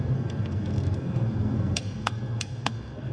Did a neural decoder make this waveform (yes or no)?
yes